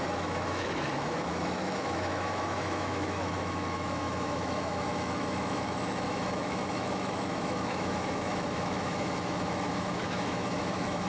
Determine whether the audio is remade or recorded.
remade